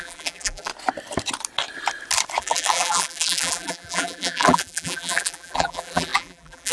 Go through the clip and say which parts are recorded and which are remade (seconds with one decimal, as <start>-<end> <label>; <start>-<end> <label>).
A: 0.0-0.7 remade; 0.7-2.4 recorded; 2.4-6.7 remade